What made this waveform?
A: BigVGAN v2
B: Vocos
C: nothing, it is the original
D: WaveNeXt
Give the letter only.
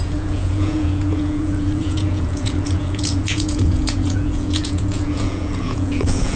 B